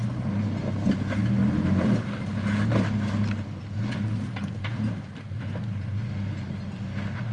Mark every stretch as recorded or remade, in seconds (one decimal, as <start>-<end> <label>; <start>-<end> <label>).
0.0-7.3 recorded